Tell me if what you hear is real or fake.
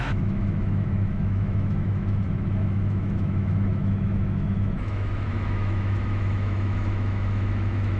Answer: fake